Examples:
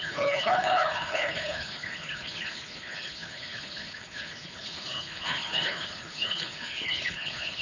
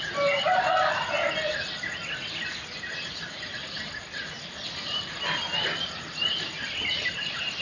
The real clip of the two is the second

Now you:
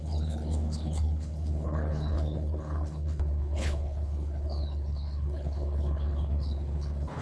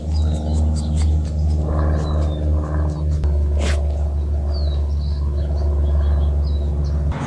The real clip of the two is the second